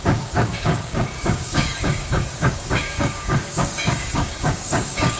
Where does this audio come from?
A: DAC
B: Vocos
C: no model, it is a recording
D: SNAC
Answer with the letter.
A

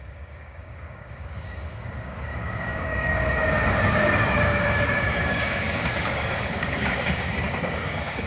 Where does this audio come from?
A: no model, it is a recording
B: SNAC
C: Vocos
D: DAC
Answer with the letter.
D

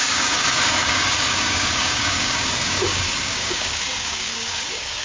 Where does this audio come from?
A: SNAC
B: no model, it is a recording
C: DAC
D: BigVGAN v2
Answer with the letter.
C